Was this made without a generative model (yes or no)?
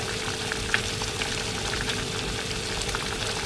no